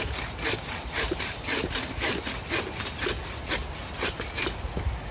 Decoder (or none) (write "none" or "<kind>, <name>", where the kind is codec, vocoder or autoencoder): none